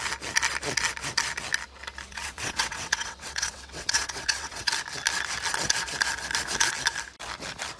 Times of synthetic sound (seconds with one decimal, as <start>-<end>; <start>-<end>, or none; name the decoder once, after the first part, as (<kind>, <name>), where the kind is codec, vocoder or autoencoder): 2.1-4.7 (vocoder, WaveNeXt)